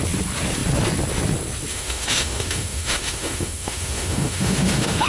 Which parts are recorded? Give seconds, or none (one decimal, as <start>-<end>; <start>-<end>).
0.0-1.7